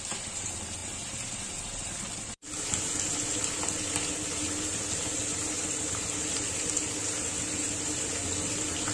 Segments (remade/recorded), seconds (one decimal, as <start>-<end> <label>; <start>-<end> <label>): 0.0-8.9 recorded